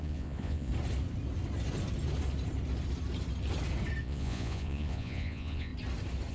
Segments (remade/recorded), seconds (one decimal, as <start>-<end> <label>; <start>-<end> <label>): 0.0-0.7 remade; 0.7-4.0 recorded; 4.0-5.7 remade; 5.7-6.3 recorded